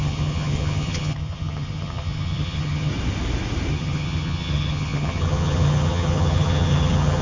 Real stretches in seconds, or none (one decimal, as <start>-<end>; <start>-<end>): 2.9-3.7